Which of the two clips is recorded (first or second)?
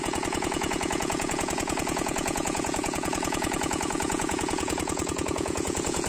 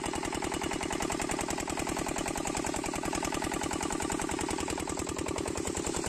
second